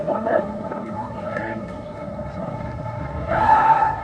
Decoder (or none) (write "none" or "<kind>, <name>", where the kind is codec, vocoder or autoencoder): codec, SNAC